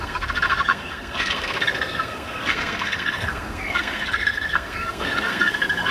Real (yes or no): no